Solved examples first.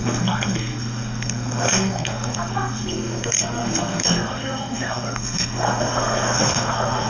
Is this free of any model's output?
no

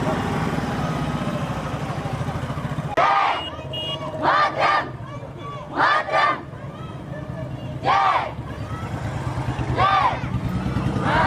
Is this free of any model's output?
yes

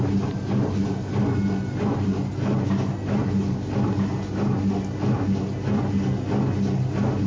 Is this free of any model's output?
yes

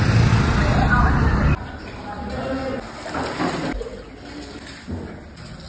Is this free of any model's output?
yes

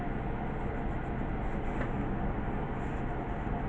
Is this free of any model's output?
yes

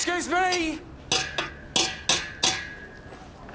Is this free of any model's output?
yes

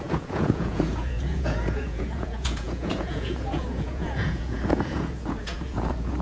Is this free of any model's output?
no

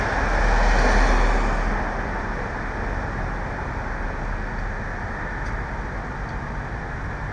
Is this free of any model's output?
yes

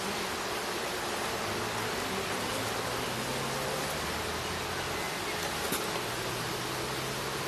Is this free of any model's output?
yes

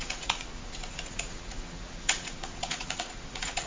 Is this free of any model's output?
no